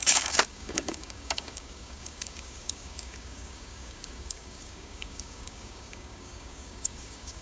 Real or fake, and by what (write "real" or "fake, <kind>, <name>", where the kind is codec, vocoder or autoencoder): fake, codec, DAC